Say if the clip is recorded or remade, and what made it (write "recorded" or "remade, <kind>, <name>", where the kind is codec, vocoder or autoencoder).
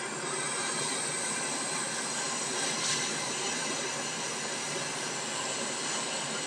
recorded